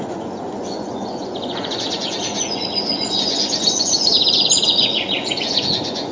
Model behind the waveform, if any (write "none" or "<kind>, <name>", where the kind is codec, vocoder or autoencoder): vocoder, Vocos